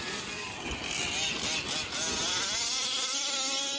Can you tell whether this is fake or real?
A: real